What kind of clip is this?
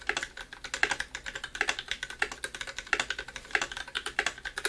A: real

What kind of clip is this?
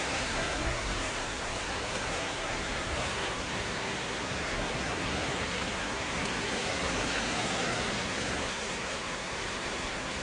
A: fake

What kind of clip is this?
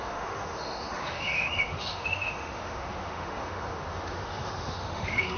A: fake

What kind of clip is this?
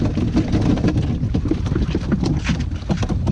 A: real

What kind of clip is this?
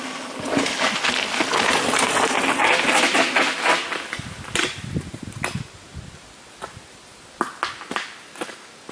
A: real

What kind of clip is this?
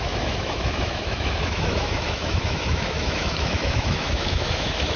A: fake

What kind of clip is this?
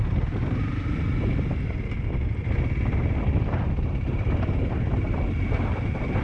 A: real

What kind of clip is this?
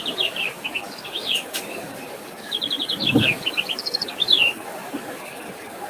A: fake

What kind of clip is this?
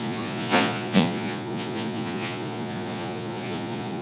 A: fake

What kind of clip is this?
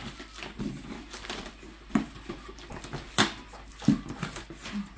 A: real